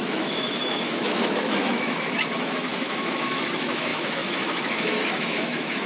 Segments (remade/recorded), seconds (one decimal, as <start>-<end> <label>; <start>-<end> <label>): 0.0-5.9 remade